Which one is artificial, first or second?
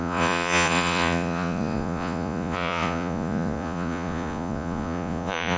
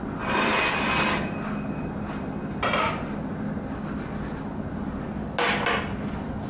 first